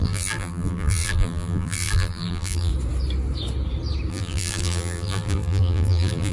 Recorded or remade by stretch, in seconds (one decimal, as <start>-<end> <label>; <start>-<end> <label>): 0.0-2.7 remade; 2.7-4.1 recorded; 4.1-6.3 remade